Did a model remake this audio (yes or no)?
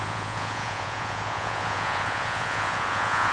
yes